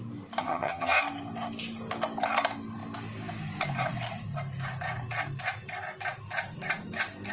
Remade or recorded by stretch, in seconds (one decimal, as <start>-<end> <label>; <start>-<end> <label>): 0.0-0.4 recorded; 0.4-1.0 remade; 1.0-7.3 recorded